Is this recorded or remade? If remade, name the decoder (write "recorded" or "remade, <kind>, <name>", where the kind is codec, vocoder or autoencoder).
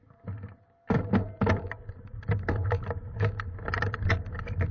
recorded